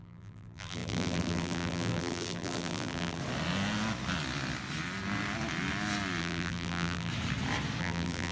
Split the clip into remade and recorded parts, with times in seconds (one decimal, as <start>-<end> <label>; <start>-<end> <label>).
0.0-3.2 remade; 3.2-6.2 recorded; 6.2-7.1 remade; 7.1-7.8 recorded; 7.8-8.3 remade